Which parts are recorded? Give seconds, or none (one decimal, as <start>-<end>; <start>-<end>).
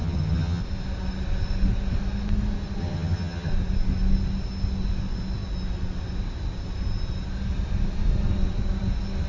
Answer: 0.6-2.8; 3.5-9.3